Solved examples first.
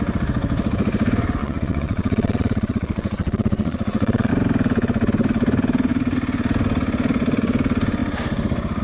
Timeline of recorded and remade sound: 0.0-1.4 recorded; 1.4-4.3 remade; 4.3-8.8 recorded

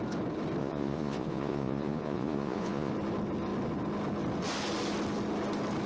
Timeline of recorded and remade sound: 0.0-0.6 recorded; 0.6-2.9 remade; 2.9-5.9 recorded

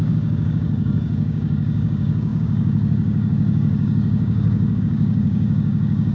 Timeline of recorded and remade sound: 0.0-6.1 remade

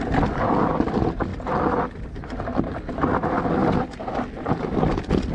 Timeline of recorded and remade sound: 0.0-5.3 recorded

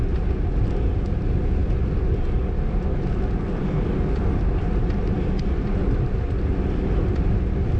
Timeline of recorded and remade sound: 0.0-7.8 recorded